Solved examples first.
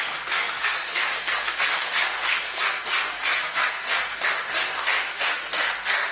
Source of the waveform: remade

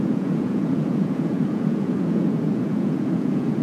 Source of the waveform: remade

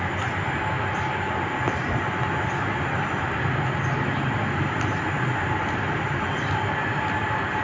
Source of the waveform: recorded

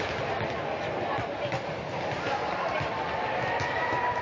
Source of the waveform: recorded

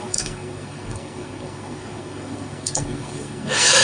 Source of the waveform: remade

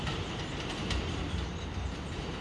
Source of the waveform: recorded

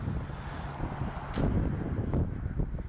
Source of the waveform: recorded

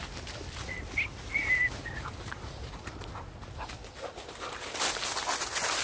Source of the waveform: recorded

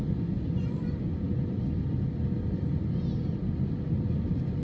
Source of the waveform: recorded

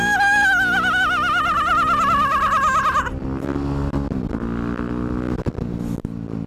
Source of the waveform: recorded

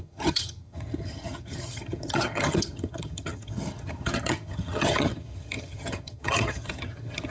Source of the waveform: remade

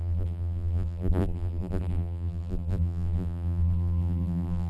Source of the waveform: remade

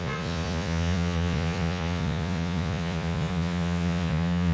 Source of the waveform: remade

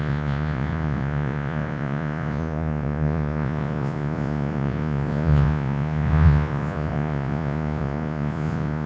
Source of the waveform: remade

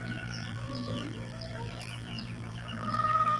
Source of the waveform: remade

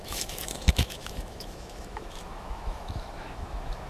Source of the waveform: remade